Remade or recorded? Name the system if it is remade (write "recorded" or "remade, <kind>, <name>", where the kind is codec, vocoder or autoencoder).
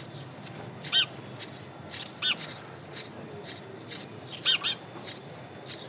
recorded